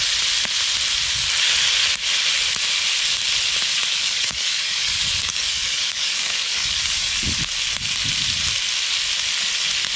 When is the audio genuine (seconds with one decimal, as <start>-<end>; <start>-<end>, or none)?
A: 0.0-3.8; 7.4-10.0